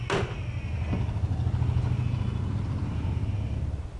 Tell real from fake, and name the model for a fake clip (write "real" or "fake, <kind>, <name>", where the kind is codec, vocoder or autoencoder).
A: real